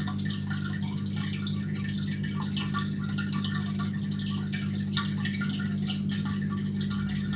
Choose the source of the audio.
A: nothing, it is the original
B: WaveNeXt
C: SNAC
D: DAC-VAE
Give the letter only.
A